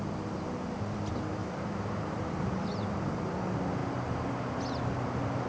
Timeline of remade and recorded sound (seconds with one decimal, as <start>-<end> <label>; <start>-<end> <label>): 0.0-1.4 recorded; 1.4-3.4 remade; 3.4-5.5 recorded